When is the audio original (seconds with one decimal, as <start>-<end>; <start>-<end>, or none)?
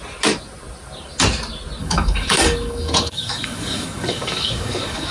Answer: 0.0-1.8